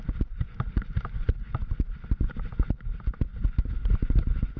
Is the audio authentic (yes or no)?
yes